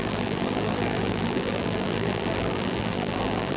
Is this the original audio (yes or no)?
no